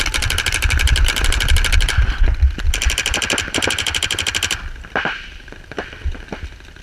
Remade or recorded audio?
remade